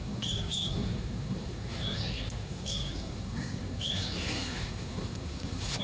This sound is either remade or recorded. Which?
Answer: remade